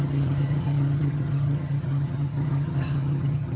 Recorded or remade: remade